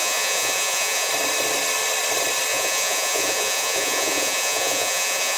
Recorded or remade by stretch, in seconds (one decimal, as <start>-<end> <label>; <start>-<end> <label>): 0.0-1.1 remade; 1.1-2.5 recorded; 2.5-5.4 remade